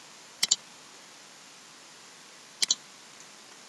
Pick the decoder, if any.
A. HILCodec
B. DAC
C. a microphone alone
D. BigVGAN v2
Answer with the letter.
C